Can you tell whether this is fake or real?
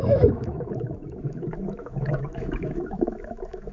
fake